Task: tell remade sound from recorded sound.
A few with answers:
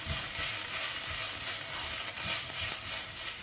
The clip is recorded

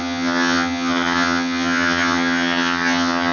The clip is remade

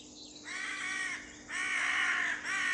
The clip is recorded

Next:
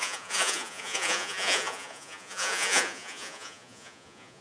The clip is remade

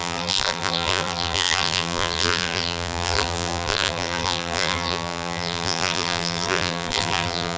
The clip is remade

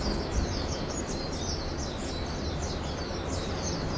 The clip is recorded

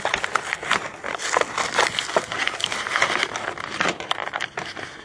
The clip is recorded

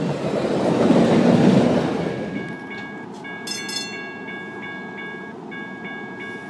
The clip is recorded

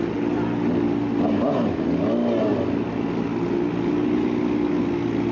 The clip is recorded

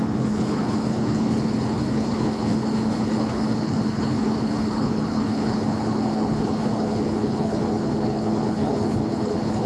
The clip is remade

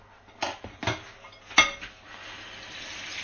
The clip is recorded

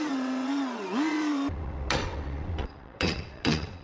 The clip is remade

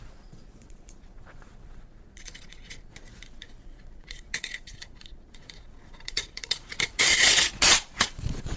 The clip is remade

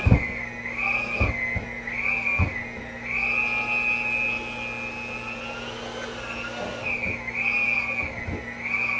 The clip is recorded